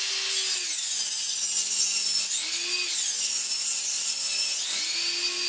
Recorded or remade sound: recorded